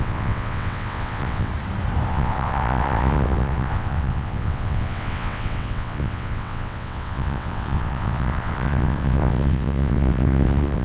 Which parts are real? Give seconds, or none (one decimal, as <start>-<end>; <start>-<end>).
1.5-2.1

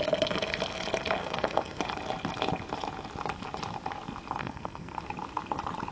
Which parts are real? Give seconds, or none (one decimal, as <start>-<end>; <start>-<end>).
0.0-1.2; 1.8-4.4; 5.0-5.9

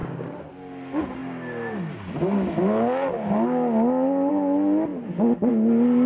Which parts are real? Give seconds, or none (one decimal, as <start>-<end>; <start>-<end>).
0.5-6.1

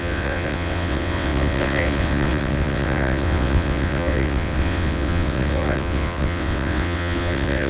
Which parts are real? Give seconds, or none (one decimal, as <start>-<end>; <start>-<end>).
none